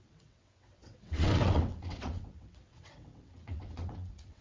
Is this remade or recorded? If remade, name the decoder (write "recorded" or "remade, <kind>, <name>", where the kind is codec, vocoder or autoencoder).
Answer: remade, vocoder, WaveNeXt